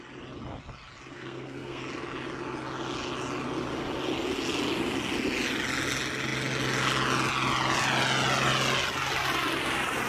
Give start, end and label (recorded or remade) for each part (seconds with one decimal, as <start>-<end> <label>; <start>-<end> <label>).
0.0-1.1 recorded; 1.1-1.8 remade; 1.8-10.1 recorded